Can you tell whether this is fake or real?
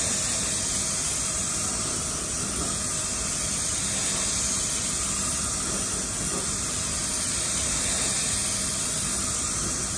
real